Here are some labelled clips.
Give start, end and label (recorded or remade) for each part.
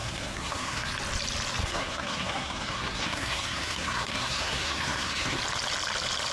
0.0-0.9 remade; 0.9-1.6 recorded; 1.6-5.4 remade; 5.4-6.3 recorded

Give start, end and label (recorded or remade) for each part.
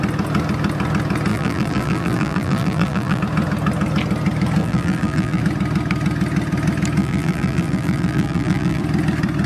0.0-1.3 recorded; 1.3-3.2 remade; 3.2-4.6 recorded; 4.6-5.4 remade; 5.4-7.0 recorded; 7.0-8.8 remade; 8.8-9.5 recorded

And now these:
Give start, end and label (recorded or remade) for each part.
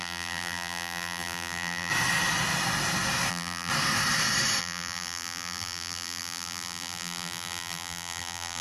0.0-1.9 remade; 1.9-3.3 recorded; 3.3-3.7 remade; 3.7-4.6 recorded; 4.6-8.6 remade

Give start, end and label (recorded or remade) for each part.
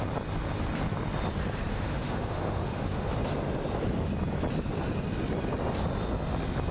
0.0-1.7 recorded; 1.7-3.1 remade; 3.1-6.7 recorded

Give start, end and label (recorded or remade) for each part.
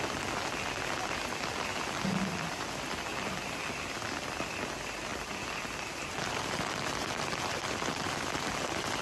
0.0-9.0 recorded